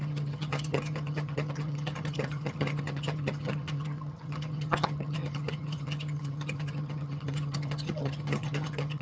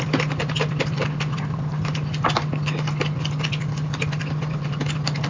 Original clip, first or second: second